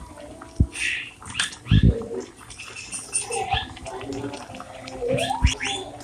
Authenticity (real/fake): real